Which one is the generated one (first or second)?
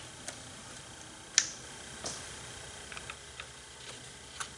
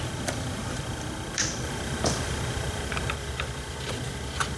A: second